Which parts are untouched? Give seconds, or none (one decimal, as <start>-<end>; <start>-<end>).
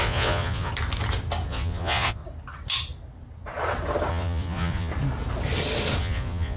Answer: 0.7-1.5; 2.2-4.1; 4.9-6.0